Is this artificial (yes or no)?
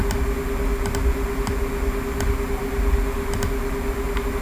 no